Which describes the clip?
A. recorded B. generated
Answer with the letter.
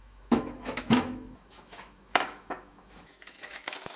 B